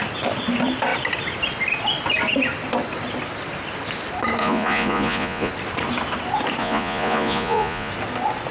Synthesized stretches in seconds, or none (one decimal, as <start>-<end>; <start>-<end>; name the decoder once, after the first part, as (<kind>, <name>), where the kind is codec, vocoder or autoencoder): 4.4-5.5 (vocoder, Vocos); 6.6-7.9